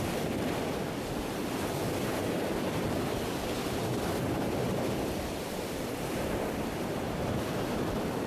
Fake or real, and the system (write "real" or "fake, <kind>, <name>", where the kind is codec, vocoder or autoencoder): fake, vocoder, BigVGAN v2